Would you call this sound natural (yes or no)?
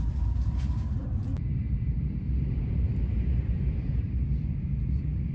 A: no